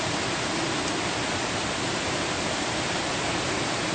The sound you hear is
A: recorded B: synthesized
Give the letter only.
A